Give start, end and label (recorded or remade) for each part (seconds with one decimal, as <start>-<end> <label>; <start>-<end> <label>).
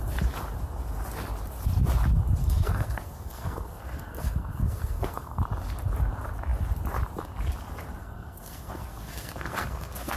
0.0-2.4 recorded; 2.4-5.4 remade; 5.4-8.0 recorded; 8.0-10.2 remade